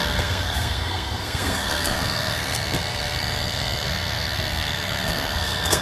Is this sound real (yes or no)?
no